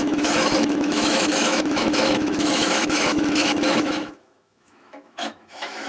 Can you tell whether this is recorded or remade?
remade